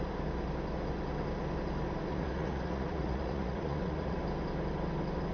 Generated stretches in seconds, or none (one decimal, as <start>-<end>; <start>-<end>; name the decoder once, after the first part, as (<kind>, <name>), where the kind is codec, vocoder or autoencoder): 2.1-4.2 (vocoder, Vocos)

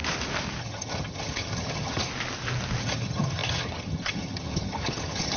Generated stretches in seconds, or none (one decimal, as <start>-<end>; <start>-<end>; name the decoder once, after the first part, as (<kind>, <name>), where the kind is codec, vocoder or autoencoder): 0.6-2.1 (vocoder, HiFi-GAN); 2.8-5.4

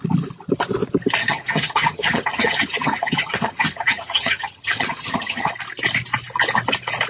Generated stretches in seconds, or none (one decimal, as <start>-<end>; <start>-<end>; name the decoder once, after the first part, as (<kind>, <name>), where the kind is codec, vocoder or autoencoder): 1.2-5.5 (vocoder, HiFi-GAN)

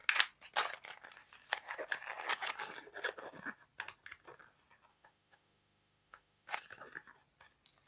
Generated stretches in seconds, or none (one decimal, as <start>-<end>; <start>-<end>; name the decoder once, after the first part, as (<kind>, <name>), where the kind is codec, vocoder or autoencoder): 4.9-6.6 (autoencoder, DAC-VAE)